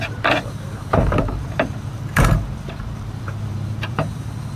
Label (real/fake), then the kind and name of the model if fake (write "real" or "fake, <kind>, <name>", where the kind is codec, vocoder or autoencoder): fake, vocoder, BigVGAN v2